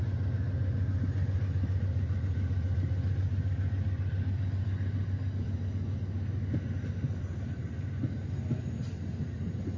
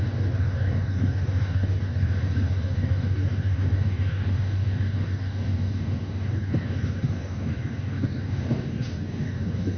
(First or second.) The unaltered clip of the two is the first